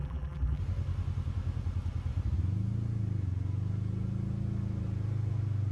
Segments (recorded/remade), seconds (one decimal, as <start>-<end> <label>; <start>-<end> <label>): 0.0-0.6 remade; 0.6-5.7 recorded